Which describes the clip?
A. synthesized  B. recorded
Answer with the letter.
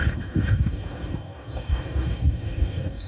A